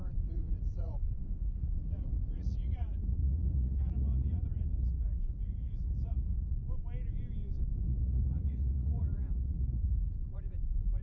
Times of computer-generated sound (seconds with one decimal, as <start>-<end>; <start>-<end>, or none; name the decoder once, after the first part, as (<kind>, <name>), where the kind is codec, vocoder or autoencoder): 0.0-6.6 (vocoder, Vocos); 7.8-11.0